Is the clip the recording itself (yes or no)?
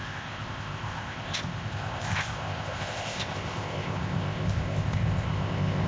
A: no